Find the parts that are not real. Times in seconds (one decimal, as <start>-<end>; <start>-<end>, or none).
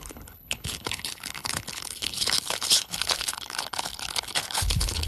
0.0-5.1